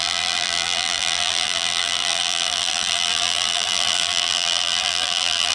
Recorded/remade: remade